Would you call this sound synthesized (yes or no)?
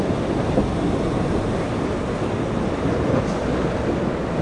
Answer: no